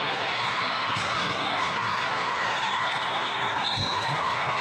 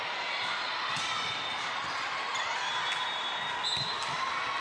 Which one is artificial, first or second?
first